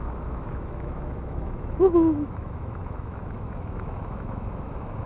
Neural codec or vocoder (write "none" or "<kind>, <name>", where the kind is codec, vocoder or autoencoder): autoencoder, DAC-VAE